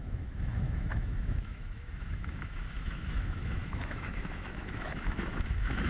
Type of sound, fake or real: fake